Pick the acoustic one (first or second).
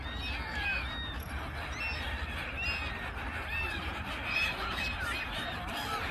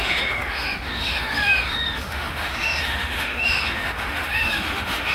first